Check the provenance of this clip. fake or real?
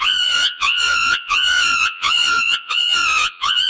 fake